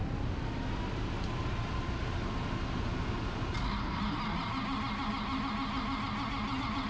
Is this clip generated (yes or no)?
no